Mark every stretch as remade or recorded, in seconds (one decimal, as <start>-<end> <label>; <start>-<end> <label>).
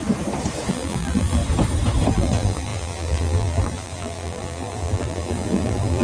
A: 0.0-0.7 recorded; 0.7-1.4 remade; 1.4-2.1 recorded; 2.1-6.0 remade